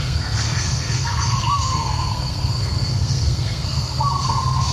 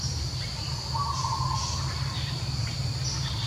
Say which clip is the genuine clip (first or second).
second